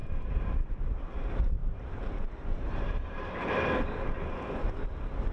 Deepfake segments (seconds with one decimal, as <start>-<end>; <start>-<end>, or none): 0.0-0.7; 1.6-3.5